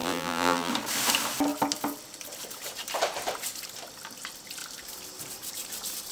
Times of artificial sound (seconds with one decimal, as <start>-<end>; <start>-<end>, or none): 0.0-0.7